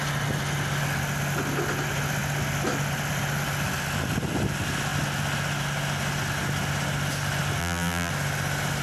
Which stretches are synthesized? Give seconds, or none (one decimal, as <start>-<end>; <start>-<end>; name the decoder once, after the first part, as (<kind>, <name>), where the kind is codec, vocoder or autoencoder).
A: 7.6-8.1 (vocoder, BigVGAN v2)